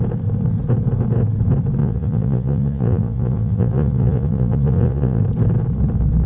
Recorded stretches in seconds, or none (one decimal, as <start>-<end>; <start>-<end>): 0.0-1.8; 5.2-6.3